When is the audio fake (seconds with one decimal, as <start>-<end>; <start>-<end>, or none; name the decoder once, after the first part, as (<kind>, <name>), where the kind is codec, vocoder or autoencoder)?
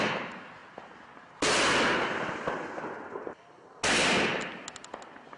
none